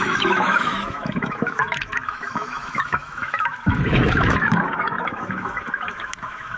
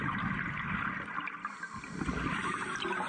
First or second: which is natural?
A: second